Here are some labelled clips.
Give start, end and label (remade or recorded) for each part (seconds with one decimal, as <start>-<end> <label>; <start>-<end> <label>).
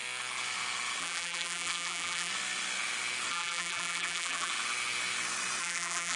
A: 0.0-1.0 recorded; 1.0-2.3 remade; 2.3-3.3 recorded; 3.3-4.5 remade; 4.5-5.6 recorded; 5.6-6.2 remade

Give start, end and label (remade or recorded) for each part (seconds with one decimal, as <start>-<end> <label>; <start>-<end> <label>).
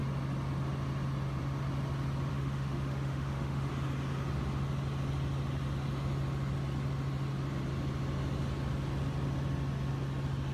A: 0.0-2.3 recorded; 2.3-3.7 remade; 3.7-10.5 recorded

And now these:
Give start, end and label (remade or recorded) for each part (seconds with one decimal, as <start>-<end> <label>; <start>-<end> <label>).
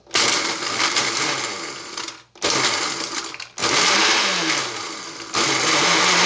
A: 0.0-6.3 recorded